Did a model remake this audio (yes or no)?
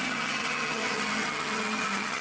yes